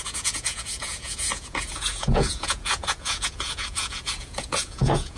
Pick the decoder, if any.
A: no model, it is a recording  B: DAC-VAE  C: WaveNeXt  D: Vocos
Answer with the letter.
D